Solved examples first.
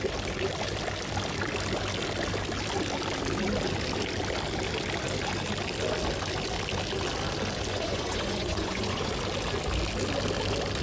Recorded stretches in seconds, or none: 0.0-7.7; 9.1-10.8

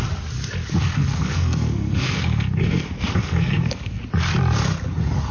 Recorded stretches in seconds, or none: 0.0-0.9; 4.0-5.3

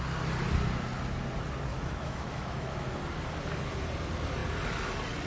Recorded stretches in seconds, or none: 0.0-1.7; 2.9-5.3

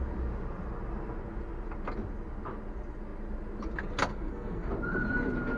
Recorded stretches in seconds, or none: 0.0-4.1; 4.7-5.6

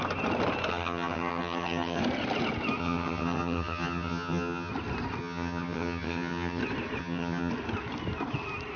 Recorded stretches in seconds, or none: 0.0-0.7; 2.0-2.8; 4.7-5.2; 6.6-7.0; 7.5-8.8

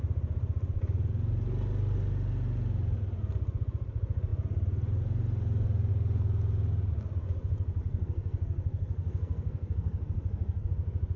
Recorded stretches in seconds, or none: 0.0-7.8; 10.7-11.2

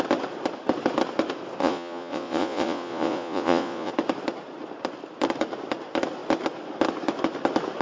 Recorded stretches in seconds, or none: 0.0-1.6; 3.9-7.8